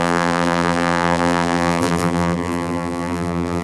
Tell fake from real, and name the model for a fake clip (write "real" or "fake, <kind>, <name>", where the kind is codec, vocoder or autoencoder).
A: fake, vocoder, BigVGAN v2